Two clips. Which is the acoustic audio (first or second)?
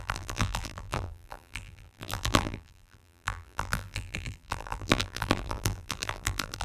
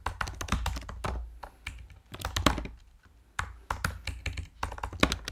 second